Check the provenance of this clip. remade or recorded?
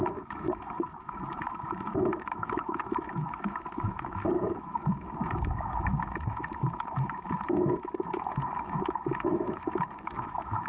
remade